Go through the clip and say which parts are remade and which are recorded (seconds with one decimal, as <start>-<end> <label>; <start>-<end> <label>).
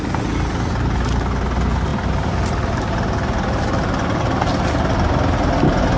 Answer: 0.0-6.0 recorded